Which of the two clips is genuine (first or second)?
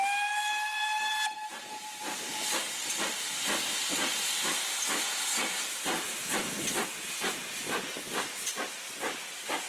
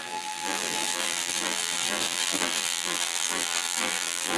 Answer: first